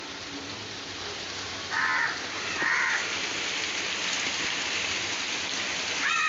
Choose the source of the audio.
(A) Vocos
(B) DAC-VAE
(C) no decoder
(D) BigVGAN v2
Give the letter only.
C